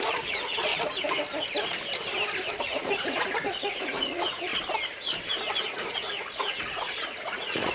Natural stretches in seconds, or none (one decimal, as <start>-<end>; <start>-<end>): 0.7-2.6; 4.5-5.6